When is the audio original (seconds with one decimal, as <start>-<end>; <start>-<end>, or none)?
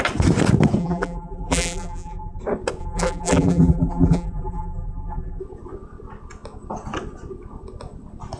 0.0-0.8; 2.4-2.8; 5.4-8.4